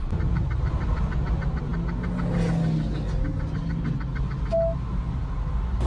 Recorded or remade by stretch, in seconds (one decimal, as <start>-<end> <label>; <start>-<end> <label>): 0.0-5.9 recorded